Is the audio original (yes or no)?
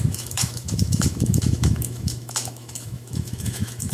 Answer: no